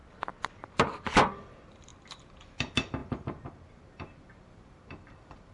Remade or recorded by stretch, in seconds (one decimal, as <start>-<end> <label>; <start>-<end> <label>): 0.0-0.6 recorded; 0.6-1.9 remade; 1.9-2.4 recorded; 2.4-5.5 remade